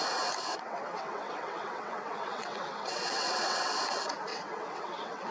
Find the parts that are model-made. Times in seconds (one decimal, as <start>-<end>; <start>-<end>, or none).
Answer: 0.5-3.7; 4.3-5.3